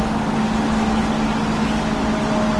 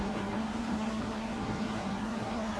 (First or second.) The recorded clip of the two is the first